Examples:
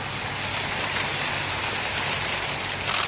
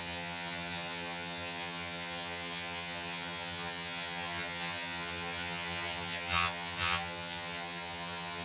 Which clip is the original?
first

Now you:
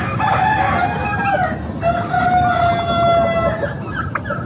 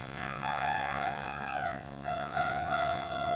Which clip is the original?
first